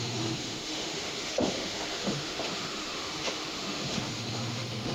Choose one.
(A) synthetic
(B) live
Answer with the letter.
A